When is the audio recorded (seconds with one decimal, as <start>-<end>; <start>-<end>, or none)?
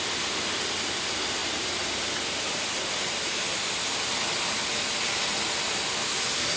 0.0-6.6